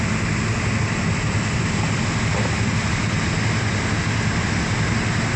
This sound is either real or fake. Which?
real